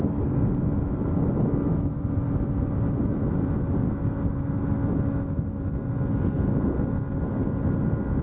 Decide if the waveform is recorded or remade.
recorded